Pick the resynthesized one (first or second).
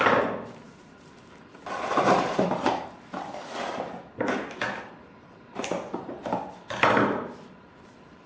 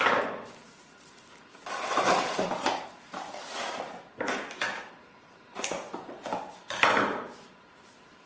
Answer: first